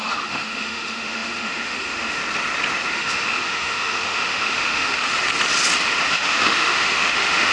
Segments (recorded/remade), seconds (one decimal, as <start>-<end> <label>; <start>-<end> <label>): 0.0-2.2 remade; 2.2-2.9 recorded; 2.9-5.1 remade; 5.1-6.1 recorded; 6.1-7.5 remade